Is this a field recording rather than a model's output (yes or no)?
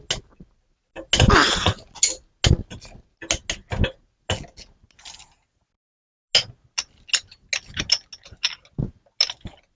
yes